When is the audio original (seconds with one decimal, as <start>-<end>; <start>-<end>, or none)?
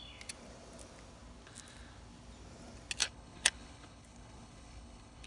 0.0-3.0